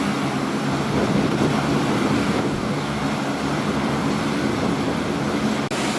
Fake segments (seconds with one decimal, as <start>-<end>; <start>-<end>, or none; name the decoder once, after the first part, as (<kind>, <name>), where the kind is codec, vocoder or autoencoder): 2.2-3.0 (codec, DAC)